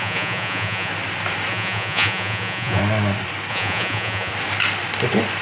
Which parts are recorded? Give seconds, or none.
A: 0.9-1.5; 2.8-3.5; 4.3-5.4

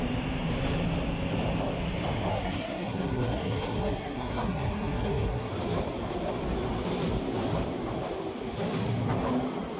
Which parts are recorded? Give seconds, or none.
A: 0.0-2.3; 5.5-9.8

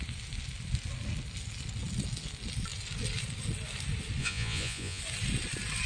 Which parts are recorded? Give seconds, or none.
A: 0.0-4.2; 5.0-5.9

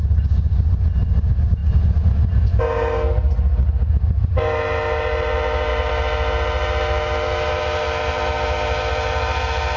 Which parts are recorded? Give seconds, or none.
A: 0.0-9.8